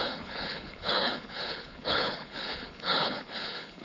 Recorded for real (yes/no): no